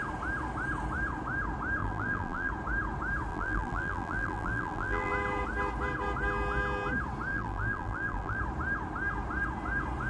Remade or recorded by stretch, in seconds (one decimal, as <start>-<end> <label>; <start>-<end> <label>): 0.0-1.8 recorded; 1.8-2.5 remade; 2.5-3.3 recorded; 3.3-5.1 remade; 5.1-7.3 recorded; 7.3-8.4 remade; 8.4-10.1 recorded